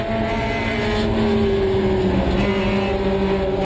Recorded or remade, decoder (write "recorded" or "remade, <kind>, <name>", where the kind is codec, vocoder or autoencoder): recorded